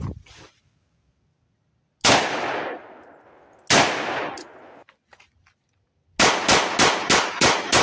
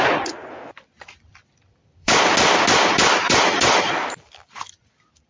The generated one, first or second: second